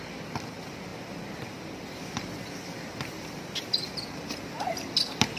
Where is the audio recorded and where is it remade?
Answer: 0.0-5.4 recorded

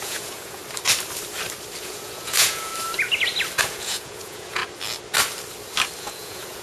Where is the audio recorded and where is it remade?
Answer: 0.0-0.6 remade; 0.6-1.8 recorded; 1.8-2.7 remade; 2.7-3.6 recorded; 3.6-4.6 remade; 4.6-6.0 recorded; 6.0-6.6 remade